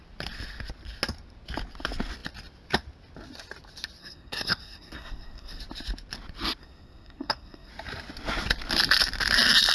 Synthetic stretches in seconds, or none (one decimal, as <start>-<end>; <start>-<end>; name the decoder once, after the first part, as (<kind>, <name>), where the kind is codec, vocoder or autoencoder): 4.0-5.6 (codec, SNAC); 6.6-7.7